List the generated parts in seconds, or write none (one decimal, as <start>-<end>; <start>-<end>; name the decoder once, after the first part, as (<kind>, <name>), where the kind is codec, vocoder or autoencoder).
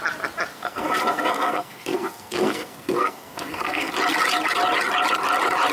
0.5-3.9 (codec, SNAC)